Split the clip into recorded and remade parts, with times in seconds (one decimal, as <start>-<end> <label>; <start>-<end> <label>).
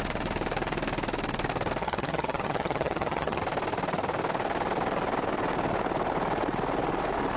0.0-1.8 recorded; 1.8-3.4 remade; 3.4-7.4 recorded